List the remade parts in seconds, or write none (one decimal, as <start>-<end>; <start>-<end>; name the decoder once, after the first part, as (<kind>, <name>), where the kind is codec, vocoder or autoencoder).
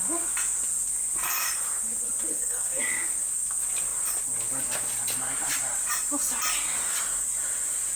2.3-2.8 (codec, SNAC)